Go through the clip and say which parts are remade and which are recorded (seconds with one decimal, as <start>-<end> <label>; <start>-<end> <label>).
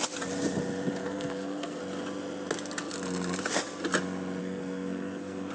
0.0-1.0 recorded; 1.0-1.8 remade; 1.8-4.4 recorded; 4.4-5.5 remade